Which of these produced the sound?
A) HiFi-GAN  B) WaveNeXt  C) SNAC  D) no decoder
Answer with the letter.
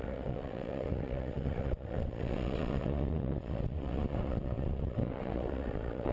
B